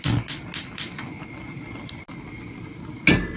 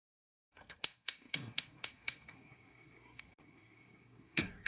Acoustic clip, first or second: first